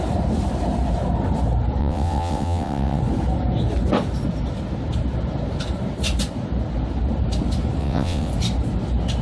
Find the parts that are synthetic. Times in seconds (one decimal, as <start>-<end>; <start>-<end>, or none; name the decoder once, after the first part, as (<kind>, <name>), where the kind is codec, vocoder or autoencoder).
1.8-3.0 (vocoder, WaveNeXt); 7.8-8.3